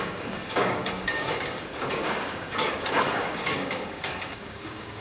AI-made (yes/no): yes